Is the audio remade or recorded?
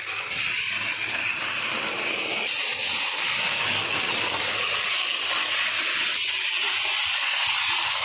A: recorded